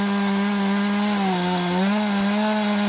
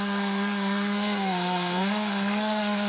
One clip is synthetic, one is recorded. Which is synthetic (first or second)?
second